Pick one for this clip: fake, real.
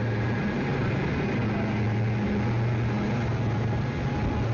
real